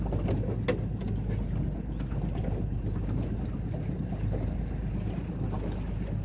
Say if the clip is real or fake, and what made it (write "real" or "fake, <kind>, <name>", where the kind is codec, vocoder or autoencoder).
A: real